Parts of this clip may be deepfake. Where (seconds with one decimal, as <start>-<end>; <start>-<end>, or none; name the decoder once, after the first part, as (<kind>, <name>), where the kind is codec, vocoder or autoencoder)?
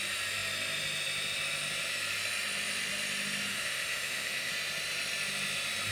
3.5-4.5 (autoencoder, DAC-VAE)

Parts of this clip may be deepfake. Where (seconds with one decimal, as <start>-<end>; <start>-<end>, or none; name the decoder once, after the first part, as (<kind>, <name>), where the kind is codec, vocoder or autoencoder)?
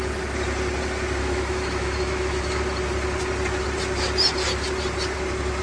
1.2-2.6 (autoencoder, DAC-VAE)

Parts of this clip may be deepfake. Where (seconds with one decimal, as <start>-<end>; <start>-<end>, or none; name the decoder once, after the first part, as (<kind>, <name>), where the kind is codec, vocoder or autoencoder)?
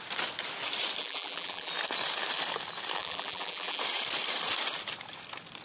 1.0-1.7 (vocoder, BigVGAN v2); 3.0-3.8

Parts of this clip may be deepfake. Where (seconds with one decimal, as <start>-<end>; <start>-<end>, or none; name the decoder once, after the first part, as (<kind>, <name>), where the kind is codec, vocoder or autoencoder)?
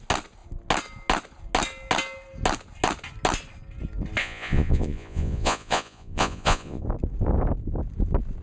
4.2-6.8 (vocoder, Vocos)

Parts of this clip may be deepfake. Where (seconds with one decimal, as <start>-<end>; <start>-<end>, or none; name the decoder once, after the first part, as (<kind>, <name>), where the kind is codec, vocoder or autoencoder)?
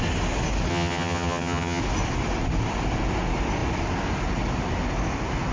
0.7-1.8 (vocoder, HiFi-GAN)